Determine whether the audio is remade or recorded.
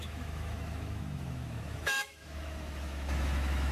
remade